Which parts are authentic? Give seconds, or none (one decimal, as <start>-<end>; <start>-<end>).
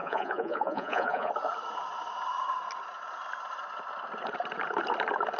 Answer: 1.3-5.4